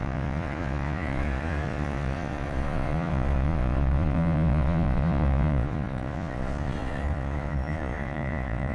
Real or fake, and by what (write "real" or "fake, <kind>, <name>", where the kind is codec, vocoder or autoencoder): fake, vocoder, Vocos